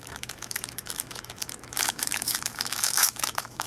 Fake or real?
fake